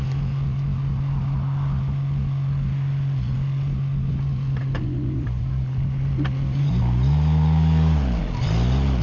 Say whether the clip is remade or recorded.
recorded